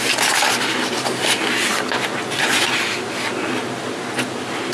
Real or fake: real